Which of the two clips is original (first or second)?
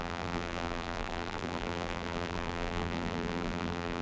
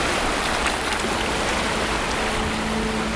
second